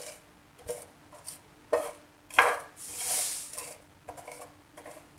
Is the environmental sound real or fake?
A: real